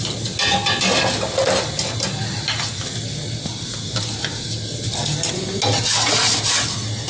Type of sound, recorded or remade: recorded